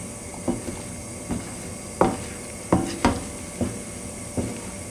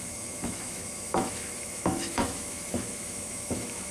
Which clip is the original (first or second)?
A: first